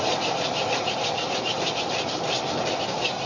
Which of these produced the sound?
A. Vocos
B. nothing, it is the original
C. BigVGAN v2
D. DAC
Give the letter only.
C